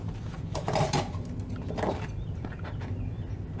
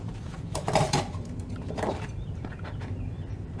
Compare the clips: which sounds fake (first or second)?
second